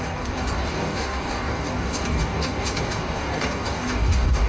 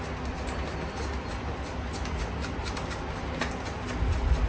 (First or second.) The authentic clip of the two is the second